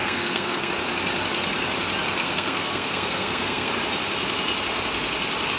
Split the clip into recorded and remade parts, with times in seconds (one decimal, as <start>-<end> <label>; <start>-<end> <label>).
0.0-0.7 remade; 0.7-2.2 recorded; 2.2-3.7 remade; 3.7-5.6 recorded